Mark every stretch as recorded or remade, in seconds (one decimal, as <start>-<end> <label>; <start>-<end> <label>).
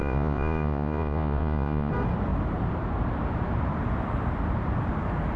0.0-1.9 remade; 1.9-5.4 recorded